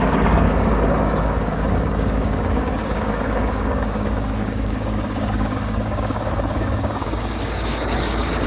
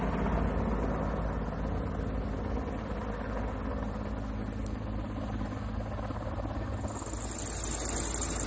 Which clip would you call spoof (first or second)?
first